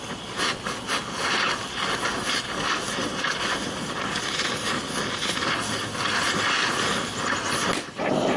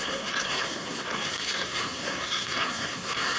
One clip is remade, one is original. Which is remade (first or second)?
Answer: second